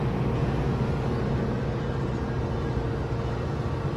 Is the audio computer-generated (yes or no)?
no